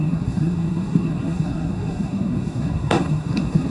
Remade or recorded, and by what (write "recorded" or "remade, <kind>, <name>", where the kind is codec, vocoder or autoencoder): remade, codec, SNAC